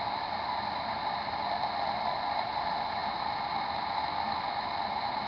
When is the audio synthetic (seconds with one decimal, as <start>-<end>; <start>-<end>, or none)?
none